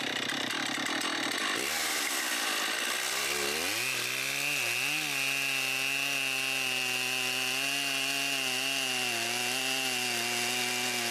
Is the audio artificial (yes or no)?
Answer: no